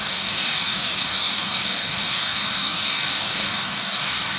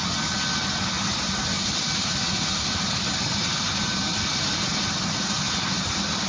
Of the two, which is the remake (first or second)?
first